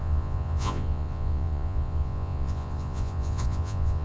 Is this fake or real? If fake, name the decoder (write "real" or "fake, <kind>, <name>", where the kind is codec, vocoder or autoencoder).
fake, vocoder, Vocos